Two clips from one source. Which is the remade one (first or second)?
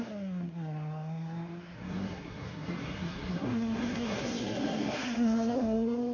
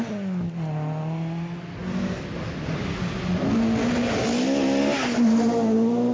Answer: first